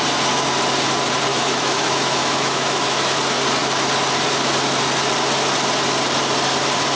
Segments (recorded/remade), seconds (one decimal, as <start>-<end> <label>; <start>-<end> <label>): 0.0-1.3 recorded; 1.3-3.2 remade; 3.2-7.0 recorded